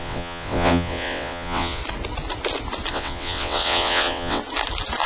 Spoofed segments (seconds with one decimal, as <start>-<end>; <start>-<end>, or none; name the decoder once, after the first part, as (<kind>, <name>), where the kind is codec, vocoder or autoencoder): 0.0-1.8 (vocoder, WaveNeXt); 2.9-4.4

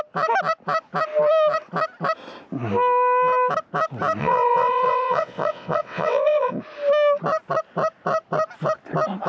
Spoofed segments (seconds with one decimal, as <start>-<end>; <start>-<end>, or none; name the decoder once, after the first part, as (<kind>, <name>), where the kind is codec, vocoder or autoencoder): 4.2-6.6 (vocoder, WaveNeXt)

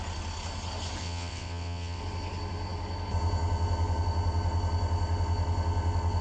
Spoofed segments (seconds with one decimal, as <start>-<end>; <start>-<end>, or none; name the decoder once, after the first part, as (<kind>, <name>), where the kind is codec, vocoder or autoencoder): 1.0-2.0 (vocoder, WaveNeXt)

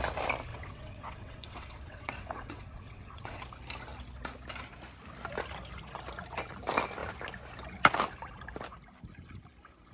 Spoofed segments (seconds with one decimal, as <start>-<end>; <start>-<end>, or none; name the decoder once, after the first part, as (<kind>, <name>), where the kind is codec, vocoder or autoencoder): 0.5-3.4 (vocoder, WaveNeXt)

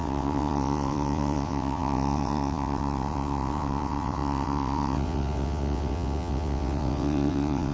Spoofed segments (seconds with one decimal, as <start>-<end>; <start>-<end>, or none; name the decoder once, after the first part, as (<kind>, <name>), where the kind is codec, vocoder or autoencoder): 0.0-7.7 (vocoder, WaveNeXt)